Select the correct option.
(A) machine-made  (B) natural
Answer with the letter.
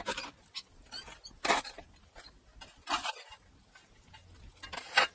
B